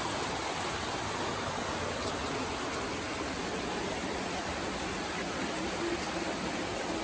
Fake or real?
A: real